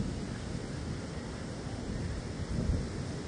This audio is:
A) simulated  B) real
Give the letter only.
B